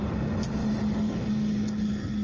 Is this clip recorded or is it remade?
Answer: recorded